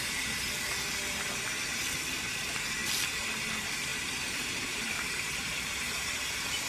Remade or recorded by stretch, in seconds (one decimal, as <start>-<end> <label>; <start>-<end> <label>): 0.0-3.9 recorded; 3.9-6.2 remade; 6.2-6.7 recorded